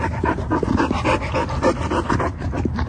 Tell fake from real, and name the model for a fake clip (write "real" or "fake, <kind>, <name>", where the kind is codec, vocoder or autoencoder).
real